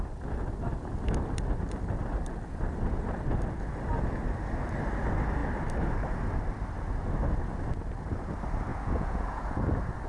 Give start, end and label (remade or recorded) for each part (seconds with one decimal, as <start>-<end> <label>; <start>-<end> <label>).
0.0-8.7 recorded; 8.7-9.6 remade; 9.6-10.1 recorded